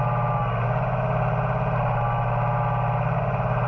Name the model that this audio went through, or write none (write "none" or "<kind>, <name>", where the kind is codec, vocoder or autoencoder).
none